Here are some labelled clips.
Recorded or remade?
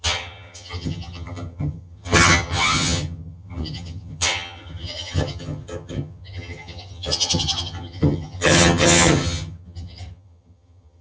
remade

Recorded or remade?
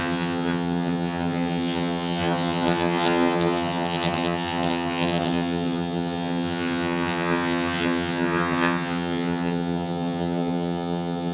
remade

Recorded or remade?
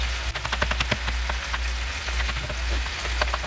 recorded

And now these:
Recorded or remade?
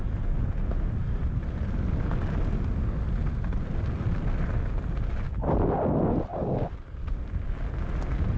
recorded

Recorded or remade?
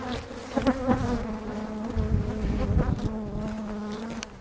recorded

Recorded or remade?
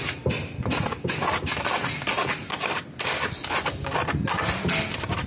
recorded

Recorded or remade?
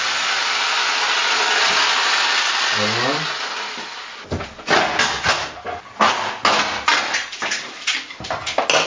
recorded